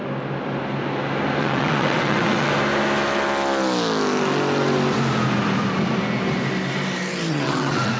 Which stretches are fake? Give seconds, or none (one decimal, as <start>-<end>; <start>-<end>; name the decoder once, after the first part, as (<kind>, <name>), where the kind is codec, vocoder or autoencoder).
1.4-2.5 (vocoder, WaveNeXt); 7.3-8.0